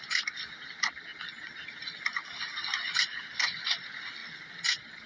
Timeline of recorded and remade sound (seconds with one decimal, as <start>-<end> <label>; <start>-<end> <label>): 0.0-5.1 recorded